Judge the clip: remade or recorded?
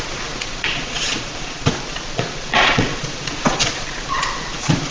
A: remade